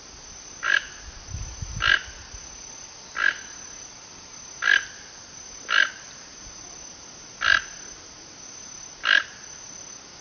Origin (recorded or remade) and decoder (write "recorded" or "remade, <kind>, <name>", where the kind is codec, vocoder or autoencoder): recorded